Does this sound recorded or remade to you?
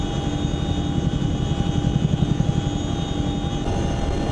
recorded